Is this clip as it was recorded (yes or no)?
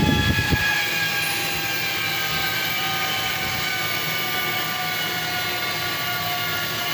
yes